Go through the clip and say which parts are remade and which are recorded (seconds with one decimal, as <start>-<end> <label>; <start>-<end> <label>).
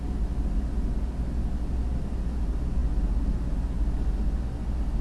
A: 0.0-5.0 recorded